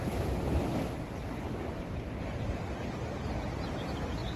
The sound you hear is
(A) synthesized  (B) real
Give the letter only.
B